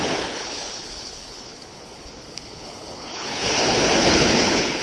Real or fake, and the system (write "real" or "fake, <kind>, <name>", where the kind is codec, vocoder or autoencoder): fake, codec, HILCodec